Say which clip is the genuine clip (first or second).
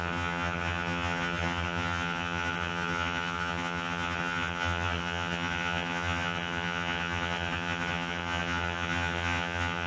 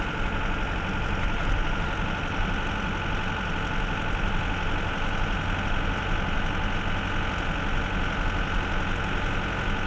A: second